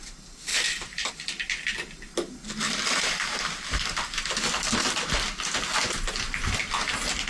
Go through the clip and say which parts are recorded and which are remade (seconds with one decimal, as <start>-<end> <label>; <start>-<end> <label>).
0.0-0.5 recorded; 0.5-1.1 remade; 1.1-7.3 recorded

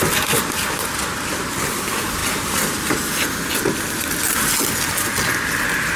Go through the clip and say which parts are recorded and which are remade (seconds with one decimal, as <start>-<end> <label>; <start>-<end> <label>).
0.0-6.0 recorded

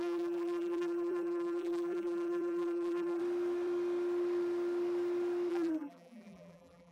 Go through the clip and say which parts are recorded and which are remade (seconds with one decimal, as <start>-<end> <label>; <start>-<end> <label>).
0.0-3.2 remade; 3.2-5.5 recorded; 5.5-6.9 remade

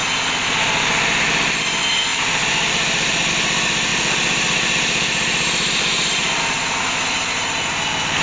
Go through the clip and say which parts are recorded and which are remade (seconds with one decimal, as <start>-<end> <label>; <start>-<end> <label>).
0.0-2.1 recorded; 2.1-3.3 remade; 3.3-3.9 recorded; 3.9-6.4 remade; 6.4-8.2 recorded

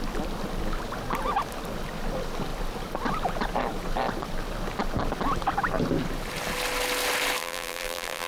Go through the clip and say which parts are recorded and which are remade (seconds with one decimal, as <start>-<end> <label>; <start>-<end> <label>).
0.0-7.4 recorded; 7.4-8.3 remade

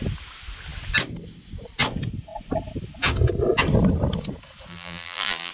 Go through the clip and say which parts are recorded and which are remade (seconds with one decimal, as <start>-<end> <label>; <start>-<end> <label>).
0.0-4.7 recorded; 4.7-5.5 remade